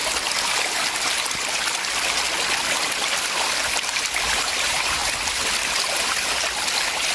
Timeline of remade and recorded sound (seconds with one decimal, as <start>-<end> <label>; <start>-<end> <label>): 0.0-4.3 recorded; 4.3-5.0 remade; 5.0-7.1 recorded